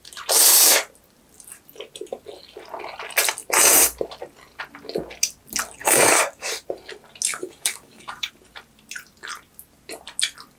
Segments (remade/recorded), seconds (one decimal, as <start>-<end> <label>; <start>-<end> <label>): 0.0-5.8 recorded; 5.8-6.5 remade; 6.5-7.3 recorded; 7.3-8.3 remade; 8.3-10.6 recorded